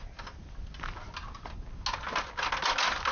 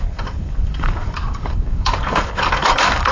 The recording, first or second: first